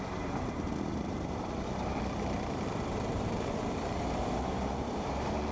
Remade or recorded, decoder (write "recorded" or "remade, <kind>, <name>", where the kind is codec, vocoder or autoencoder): remade, vocoder, BigVGAN v2